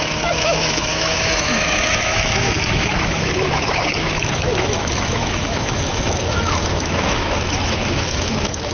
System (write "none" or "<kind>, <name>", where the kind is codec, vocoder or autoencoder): autoencoder, DAC-VAE